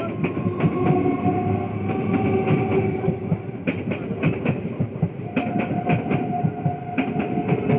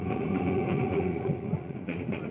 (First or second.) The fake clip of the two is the second